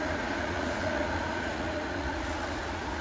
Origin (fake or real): fake